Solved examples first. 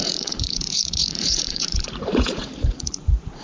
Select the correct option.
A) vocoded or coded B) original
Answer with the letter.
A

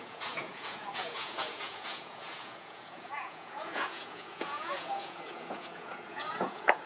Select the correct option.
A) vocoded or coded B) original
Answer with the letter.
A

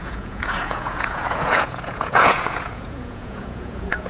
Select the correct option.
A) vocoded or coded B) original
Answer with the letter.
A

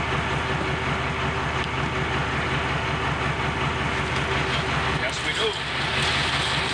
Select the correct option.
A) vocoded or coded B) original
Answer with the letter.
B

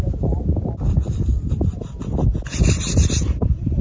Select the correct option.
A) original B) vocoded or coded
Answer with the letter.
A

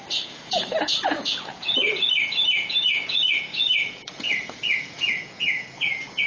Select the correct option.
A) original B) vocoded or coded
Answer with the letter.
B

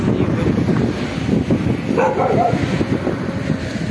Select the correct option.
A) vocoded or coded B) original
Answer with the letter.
B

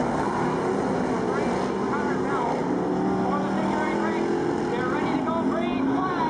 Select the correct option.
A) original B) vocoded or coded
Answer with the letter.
A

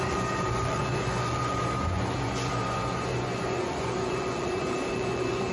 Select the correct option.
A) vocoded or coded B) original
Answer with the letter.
A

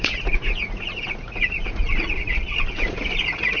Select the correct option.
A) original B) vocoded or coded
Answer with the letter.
B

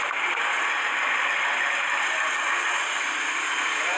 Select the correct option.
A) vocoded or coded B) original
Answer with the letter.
B